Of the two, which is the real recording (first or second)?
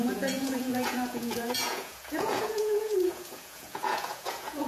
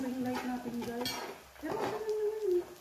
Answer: second